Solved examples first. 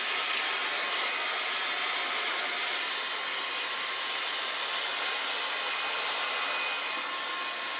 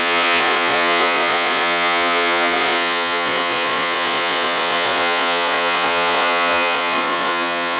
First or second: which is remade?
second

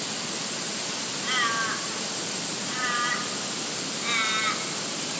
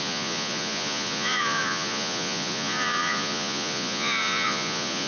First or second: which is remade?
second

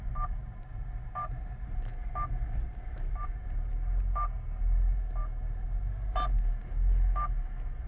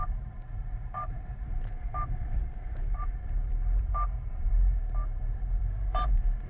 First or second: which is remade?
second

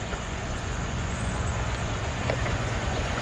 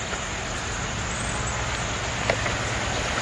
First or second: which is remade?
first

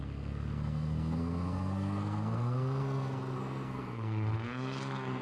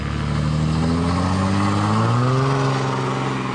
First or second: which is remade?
first